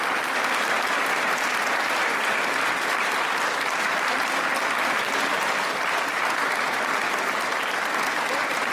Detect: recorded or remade recorded